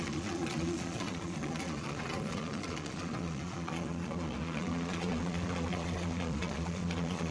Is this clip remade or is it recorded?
remade